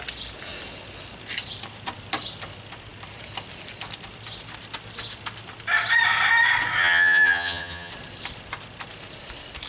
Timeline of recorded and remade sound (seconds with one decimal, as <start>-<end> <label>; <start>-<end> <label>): 0.0-6.8 recorded; 6.8-7.9 remade; 7.9-9.7 recorded